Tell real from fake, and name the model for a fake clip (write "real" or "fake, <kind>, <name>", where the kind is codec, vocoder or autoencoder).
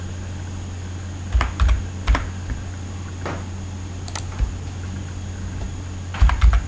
real